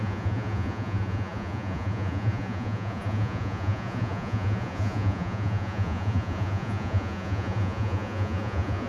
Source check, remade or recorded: remade